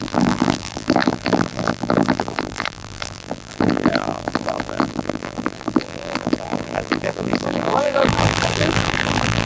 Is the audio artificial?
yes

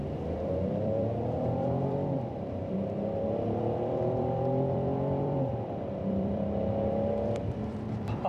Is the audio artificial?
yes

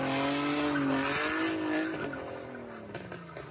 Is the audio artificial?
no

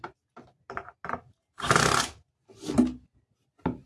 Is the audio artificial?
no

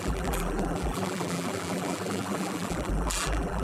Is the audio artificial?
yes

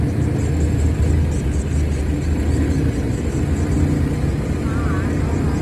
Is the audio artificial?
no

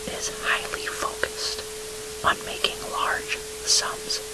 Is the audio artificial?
no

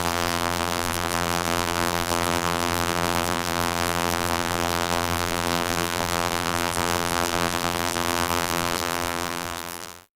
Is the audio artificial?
yes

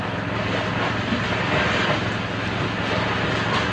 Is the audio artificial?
no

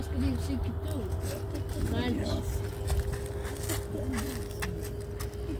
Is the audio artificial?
no